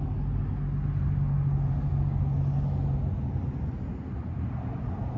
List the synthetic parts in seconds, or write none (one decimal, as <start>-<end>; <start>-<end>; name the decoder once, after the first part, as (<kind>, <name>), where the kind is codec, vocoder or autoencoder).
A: none